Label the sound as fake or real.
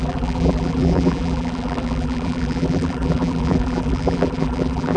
fake